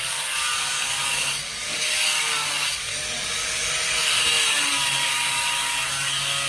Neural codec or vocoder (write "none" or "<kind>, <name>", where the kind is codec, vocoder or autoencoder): codec, DAC